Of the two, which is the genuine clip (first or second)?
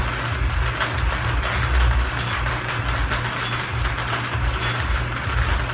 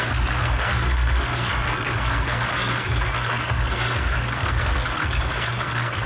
first